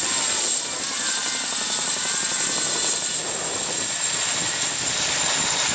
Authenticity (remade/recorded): recorded